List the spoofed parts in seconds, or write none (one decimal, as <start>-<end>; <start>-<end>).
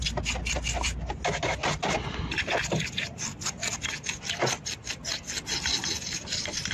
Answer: none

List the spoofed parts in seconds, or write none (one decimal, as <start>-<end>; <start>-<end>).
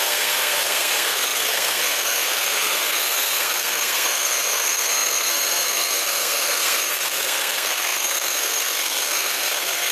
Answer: 0.0-9.9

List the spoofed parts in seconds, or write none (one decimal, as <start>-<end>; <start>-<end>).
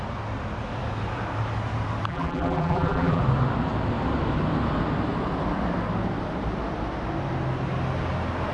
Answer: 2.1-3.2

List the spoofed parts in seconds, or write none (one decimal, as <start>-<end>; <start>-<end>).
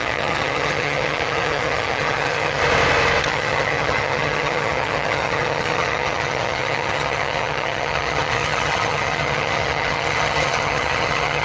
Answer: 0.0-2.6; 3.2-11.4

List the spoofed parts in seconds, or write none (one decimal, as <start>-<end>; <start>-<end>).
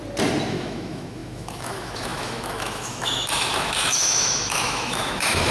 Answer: 0.5-5.5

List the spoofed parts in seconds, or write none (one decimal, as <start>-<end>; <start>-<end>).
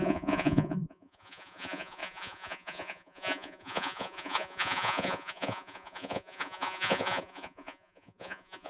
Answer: 0.0-8.7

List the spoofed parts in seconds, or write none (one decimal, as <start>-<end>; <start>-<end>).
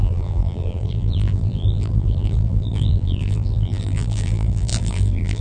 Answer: 0.0-5.4